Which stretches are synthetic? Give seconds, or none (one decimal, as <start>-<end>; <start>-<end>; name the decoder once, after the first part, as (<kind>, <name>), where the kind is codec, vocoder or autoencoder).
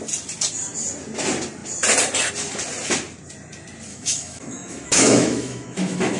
3.9-6.2 (autoencoder, DAC-VAE)